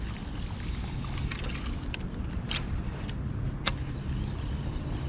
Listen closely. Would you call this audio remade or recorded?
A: recorded